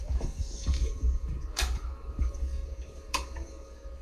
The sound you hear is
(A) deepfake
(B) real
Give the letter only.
A